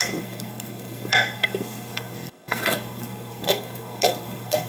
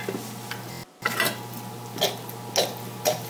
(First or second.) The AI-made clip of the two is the first